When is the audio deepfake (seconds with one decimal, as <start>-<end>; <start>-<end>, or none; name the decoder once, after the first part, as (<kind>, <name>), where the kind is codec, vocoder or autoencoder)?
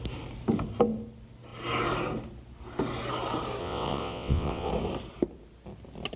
3.6-4.7 (vocoder, WaveNeXt)